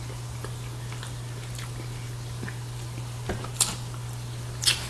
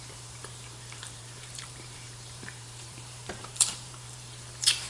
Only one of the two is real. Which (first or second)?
first